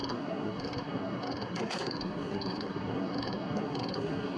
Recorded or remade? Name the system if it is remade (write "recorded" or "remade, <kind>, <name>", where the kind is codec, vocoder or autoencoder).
remade, codec, SNAC